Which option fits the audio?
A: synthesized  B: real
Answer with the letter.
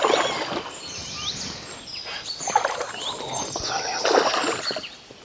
B